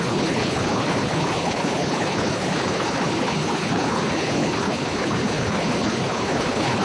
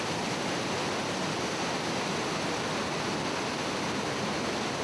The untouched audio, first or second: second